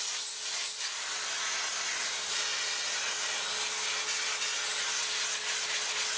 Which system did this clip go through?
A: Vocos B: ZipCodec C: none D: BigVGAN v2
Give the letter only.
C